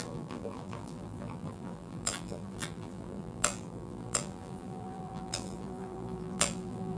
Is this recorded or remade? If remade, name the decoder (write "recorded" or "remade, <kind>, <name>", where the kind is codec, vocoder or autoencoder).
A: remade, vocoder, BigVGAN v2